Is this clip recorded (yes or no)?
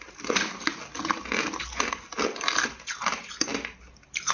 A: yes